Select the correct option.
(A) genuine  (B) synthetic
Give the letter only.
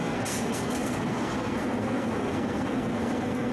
B